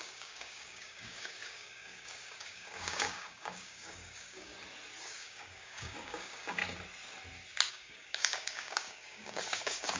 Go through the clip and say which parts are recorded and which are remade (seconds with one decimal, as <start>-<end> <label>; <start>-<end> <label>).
0.0-4.5 remade; 4.5-5.0 recorded; 5.0-6.6 remade; 6.6-7.7 recorded; 7.7-10.0 remade